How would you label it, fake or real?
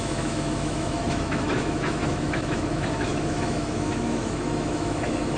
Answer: fake